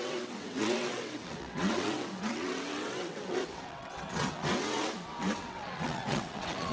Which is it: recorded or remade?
remade